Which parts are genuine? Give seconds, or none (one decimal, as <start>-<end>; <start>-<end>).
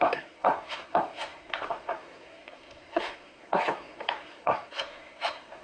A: none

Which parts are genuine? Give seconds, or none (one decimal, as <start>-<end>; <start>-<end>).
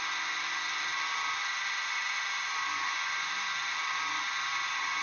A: 0.0-2.7; 3.3-5.0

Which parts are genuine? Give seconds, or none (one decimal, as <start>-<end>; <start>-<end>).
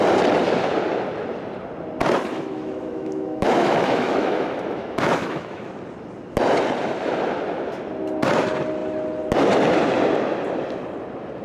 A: 0.0-2.3; 5.7-11.4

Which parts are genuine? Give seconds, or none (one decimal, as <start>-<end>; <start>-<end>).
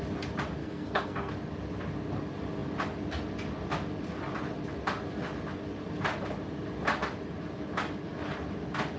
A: 0.0-0.6; 1.3-9.0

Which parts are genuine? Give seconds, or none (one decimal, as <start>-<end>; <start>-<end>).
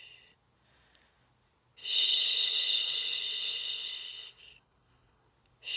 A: 0.0-1.8; 5.3-5.8